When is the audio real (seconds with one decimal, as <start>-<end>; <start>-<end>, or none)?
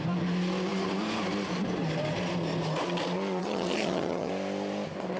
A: 0.0-3.4; 4.3-5.2